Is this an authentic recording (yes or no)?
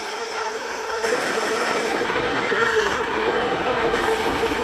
no